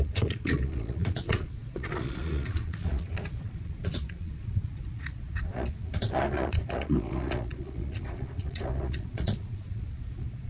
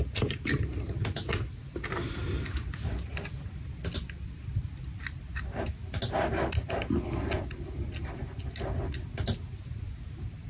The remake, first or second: first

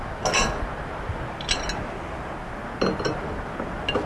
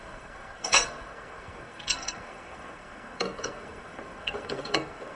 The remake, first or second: second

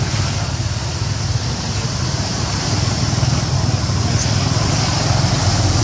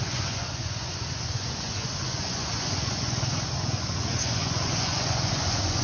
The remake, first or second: second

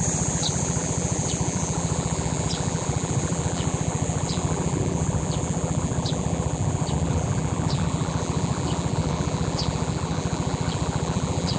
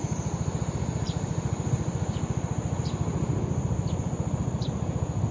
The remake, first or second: first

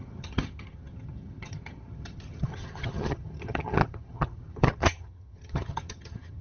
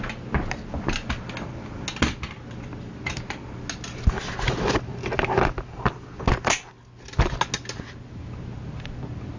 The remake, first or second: first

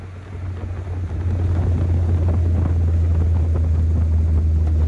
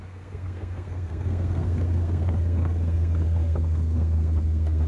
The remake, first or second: second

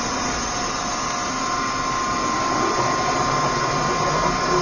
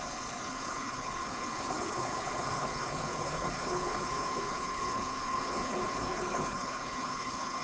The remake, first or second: second